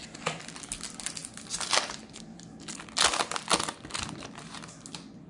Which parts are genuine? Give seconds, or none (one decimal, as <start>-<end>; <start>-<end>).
0.0-5.3